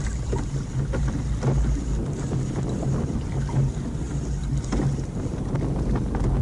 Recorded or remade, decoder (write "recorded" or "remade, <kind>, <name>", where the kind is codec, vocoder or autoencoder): recorded